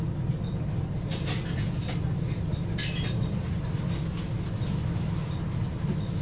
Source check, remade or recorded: recorded